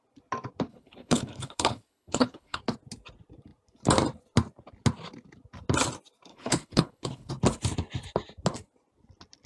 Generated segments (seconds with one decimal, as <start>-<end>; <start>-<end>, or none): 0.7-2.6; 6.3-7.3